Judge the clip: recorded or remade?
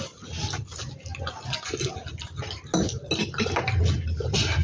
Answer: recorded